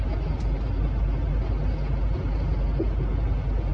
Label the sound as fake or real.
real